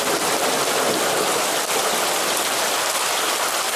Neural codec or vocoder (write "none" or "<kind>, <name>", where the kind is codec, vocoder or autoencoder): none